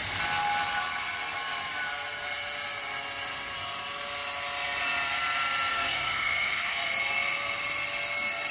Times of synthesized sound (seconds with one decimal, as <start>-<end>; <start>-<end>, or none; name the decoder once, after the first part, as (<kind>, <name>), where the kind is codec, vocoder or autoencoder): 5.7-6.8 (codec, SNAC)